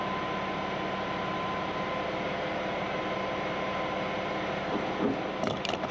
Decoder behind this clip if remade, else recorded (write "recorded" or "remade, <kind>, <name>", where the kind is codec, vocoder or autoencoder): recorded